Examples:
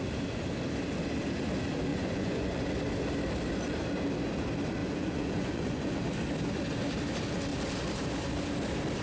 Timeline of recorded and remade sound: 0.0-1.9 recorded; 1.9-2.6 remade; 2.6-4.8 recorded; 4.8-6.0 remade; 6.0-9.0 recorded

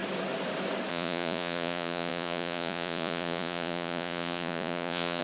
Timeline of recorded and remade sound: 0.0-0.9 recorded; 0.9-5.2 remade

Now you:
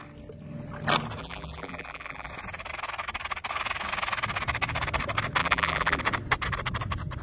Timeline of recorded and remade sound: 0.0-1.2 recorded; 1.2-2.3 remade; 2.3-5.4 recorded; 5.4-6.0 remade; 6.0-7.2 recorded

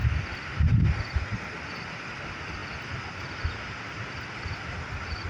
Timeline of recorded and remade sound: 0.0-5.3 recorded

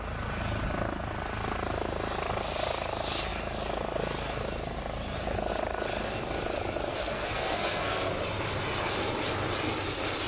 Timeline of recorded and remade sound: 0.0-6.9 recorded; 6.9-8.1 remade; 8.1-10.3 recorded

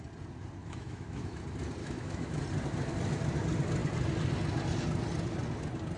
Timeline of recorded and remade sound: 0.0-0.6 recorded; 0.6-1.4 remade; 1.4-1.8 recorded; 1.8-2.4 remade; 2.4-6.0 recorded

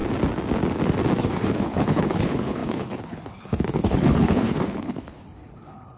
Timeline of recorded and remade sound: 0.0-1.2 recorded; 1.2-6.0 remade

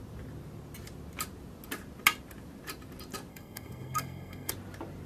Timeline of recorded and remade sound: 0.0-3.3 recorded; 3.3-4.5 remade; 4.5-5.1 recorded